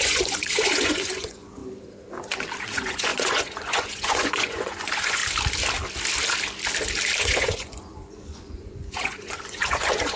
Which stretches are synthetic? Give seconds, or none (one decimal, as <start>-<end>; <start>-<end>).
0.0-1.6; 2.6-5.2; 7.2-10.2